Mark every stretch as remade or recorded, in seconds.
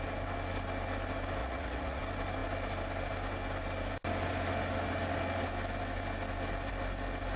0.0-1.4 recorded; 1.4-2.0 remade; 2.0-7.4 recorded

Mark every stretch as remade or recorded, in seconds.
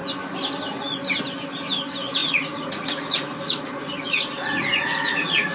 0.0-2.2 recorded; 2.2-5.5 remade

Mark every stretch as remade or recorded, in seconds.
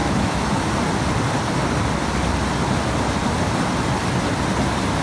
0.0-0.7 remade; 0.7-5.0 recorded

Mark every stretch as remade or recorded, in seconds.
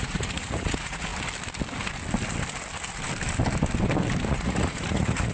0.0-1.1 remade; 1.1-4.3 recorded; 4.3-5.3 remade